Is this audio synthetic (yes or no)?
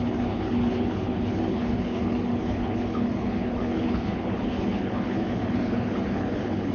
yes